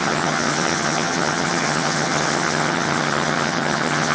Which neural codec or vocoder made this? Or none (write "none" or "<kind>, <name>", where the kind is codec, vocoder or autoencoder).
vocoder, HiFi-GAN